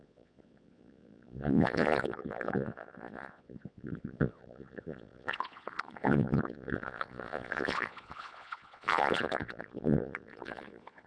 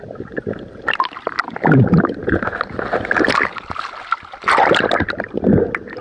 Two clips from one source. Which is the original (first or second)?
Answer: second